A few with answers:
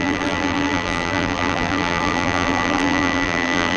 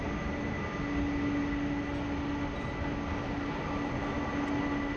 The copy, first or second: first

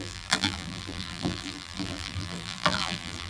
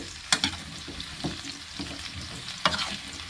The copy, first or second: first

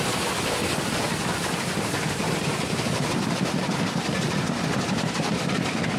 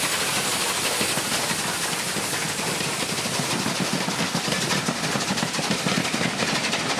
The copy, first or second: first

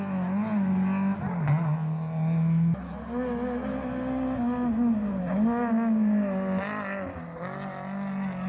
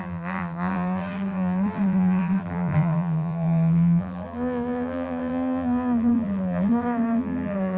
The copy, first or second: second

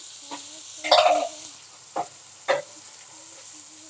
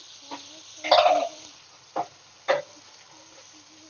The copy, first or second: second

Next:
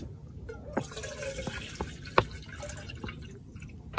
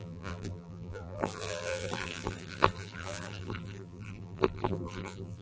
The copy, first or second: second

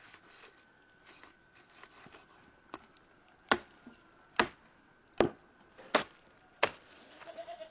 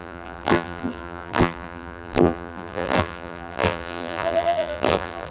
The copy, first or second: second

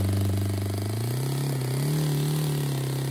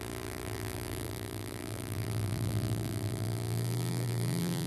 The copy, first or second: second